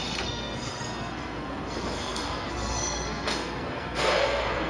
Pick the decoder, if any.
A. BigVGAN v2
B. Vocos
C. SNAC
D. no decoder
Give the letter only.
C